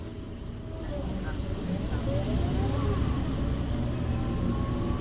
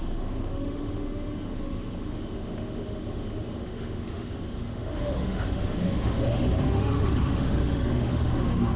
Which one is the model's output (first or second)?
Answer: second